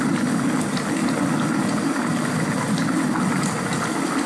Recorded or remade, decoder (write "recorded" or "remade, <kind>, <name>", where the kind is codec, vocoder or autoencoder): recorded